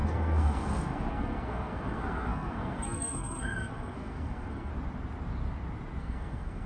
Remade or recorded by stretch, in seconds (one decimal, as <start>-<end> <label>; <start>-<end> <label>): 0.0-4.7 remade; 4.7-6.0 recorded; 6.0-6.7 remade